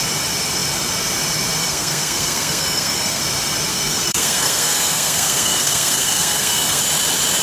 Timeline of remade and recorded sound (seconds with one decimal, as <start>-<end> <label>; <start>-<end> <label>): 0.0-1.6 recorded; 1.6-3.2 remade; 3.2-3.7 recorded; 3.7-6.8 remade; 6.8-7.4 recorded